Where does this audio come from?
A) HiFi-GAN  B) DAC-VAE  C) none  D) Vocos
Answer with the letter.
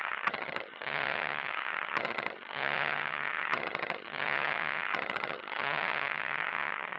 A